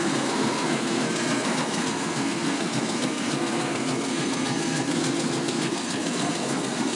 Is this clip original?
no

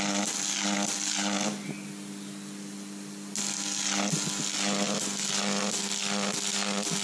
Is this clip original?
yes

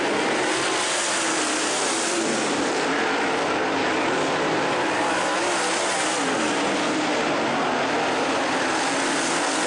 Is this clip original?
yes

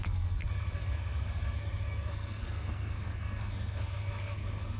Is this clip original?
no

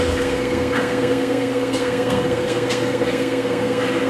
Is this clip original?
no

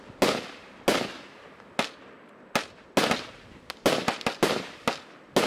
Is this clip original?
yes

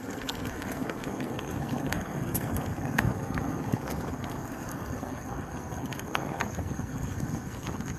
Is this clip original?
no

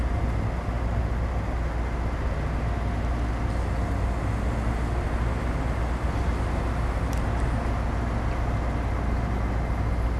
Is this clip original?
yes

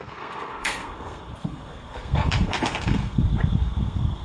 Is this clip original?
no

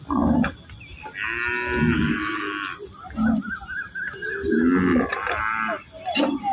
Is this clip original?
yes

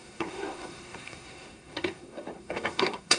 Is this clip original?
no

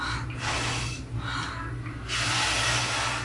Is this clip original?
yes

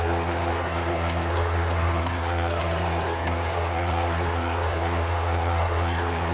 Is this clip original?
no